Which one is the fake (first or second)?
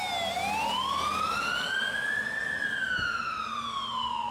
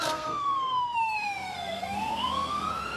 second